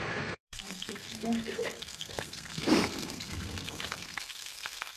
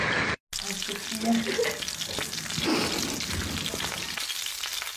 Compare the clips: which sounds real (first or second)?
second